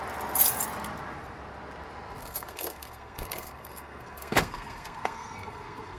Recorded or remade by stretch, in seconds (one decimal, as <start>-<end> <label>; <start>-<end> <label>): 0.0-2.2 recorded; 2.2-6.0 remade